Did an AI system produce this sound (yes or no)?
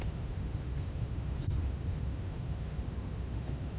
yes